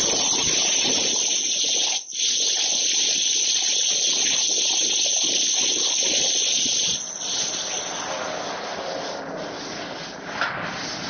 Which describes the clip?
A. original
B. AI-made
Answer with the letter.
A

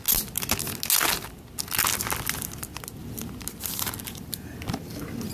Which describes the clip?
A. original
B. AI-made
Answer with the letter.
A